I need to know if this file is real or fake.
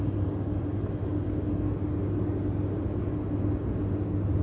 real